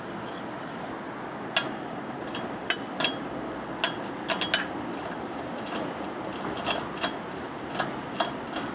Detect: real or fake real